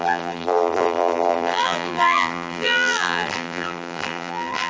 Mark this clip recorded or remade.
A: remade